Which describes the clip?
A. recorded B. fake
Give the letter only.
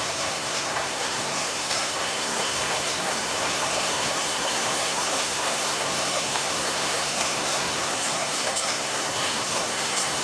B